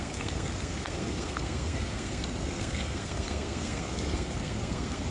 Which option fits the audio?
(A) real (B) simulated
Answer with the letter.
B